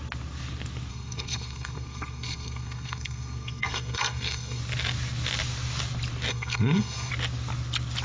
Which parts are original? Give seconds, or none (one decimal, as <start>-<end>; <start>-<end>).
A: 0.0-0.9; 4.6-6.3; 7.1-8.0